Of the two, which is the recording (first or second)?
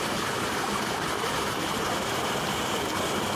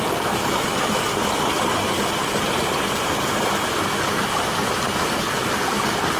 second